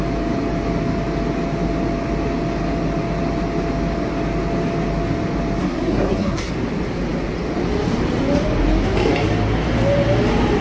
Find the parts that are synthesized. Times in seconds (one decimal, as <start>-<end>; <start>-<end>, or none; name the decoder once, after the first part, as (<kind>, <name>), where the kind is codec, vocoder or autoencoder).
5.6-6.5 (codec, SNAC)

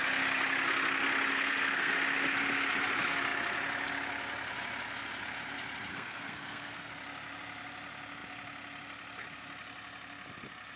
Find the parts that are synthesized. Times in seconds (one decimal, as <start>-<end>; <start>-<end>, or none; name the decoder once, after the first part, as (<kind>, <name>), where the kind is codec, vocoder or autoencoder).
1.3-1.9 (codec, SNAC); 5.9-6.9

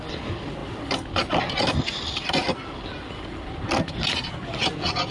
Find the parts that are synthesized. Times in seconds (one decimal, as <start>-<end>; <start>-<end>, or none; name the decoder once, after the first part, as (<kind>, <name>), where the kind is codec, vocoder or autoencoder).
none

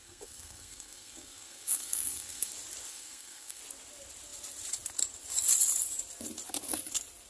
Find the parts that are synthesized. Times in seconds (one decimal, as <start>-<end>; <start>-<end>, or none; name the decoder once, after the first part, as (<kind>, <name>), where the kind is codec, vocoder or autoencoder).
0.0-2.5 (codec, SNAC); 2.9-3.6

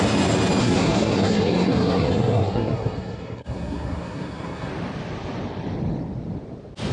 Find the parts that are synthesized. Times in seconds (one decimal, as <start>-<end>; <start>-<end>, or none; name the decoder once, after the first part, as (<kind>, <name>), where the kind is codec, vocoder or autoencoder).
0.6-4.7 (codec, SNAC)

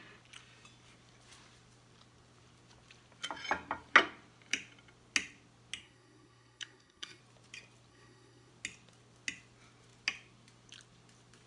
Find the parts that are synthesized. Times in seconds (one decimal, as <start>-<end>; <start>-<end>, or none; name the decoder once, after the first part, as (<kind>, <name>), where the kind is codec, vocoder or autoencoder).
5.8-7.2 (codec, SNAC); 7.9-8.5

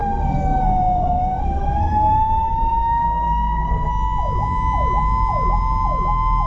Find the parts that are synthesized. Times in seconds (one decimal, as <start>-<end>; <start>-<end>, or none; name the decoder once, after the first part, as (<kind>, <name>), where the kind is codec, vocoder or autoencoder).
0.0-3.9 (codec, SNAC)

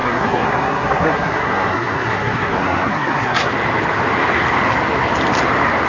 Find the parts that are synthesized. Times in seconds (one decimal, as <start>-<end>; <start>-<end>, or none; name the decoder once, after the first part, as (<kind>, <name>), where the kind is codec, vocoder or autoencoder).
0.0-3.5 (codec, SNAC)